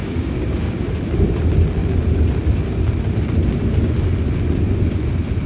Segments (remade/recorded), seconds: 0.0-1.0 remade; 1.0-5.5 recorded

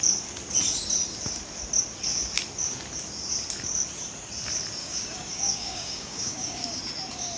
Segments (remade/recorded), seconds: 0.0-4.8 recorded; 4.8-6.8 remade; 6.8-7.4 recorded

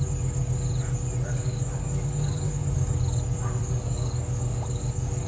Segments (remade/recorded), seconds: 0.0-1.3 recorded; 1.3-3.0 remade; 3.0-3.6 recorded; 3.6-5.3 remade